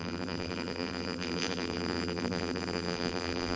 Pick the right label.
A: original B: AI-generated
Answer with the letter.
B